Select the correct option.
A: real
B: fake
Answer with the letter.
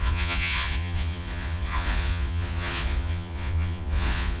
B